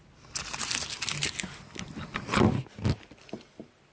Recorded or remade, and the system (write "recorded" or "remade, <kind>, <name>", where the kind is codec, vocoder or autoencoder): recorded